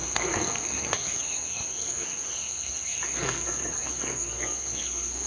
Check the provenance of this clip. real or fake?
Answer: fake